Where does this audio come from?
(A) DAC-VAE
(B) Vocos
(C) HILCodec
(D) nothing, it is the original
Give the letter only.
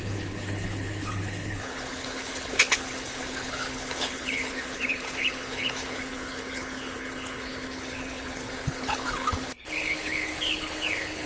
C